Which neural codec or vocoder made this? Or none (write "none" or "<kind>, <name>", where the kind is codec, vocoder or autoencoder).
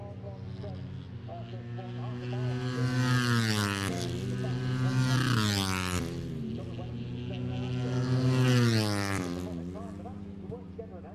none